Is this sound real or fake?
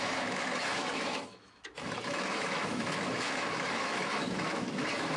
fake